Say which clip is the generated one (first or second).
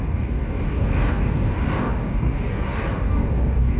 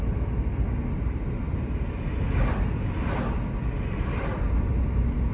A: first